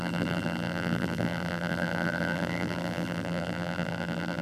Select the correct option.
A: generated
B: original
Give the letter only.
A